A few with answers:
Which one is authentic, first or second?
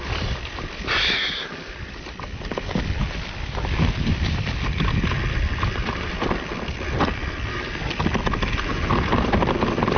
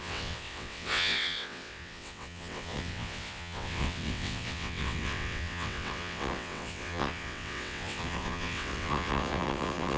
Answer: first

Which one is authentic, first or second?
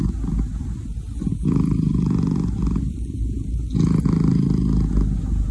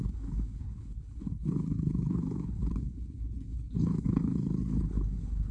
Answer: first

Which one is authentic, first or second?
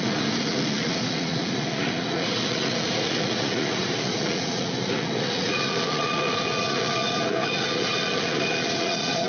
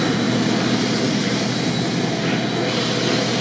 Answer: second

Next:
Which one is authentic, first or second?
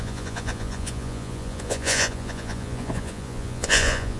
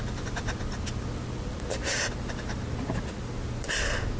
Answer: second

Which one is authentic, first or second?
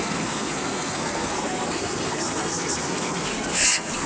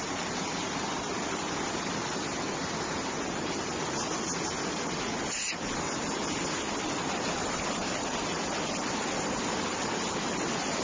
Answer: second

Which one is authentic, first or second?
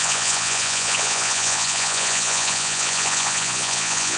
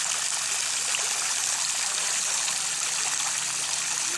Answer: second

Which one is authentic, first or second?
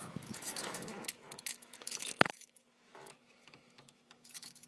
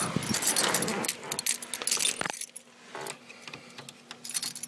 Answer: second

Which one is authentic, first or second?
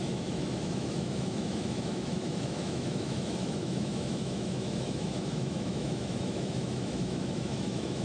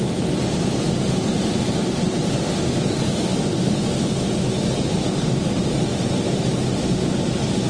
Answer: second